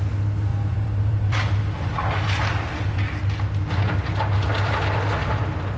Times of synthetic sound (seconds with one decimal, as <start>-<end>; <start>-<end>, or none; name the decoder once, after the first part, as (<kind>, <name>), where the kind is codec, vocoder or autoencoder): 0.5-4.0 (vocoder, BigVGAN v2)